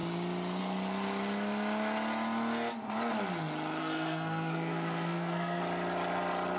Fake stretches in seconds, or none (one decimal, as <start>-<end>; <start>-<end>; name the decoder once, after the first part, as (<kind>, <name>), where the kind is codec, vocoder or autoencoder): 3.8-5.6 (codec, SNAC)

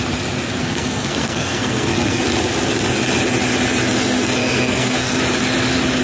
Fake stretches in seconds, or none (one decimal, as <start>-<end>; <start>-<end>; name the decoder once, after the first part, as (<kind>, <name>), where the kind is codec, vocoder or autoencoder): 0.6-2.2 (codec, SNAC); 4.4-5.2

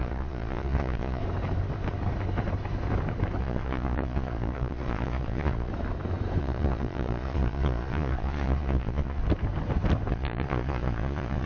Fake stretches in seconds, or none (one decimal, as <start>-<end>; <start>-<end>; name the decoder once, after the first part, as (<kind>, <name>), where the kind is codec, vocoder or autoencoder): 0.0-1.2 (vocoder, Vocos); 3.4-5.7; 6.4-9.2; 10.1-11.5

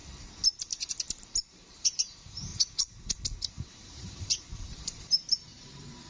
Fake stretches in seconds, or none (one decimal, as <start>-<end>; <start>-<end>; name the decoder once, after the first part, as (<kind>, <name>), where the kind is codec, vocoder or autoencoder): 1.5-2.5 (vocoder, BigVGAN v2); 3.5-6.1

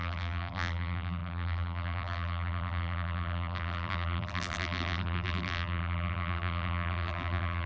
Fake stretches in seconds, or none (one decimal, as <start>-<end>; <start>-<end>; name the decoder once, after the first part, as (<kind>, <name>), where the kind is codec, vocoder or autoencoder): 0.0-7.7 (vocoder, BigVGAN v2)